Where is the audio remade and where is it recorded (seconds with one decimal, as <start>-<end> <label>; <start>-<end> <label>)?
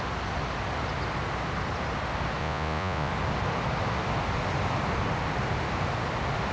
0.0-2.4 recorded; 2.4-3.1 remade; 3.1-6.5 recorded